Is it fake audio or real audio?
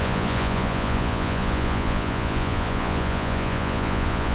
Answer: fake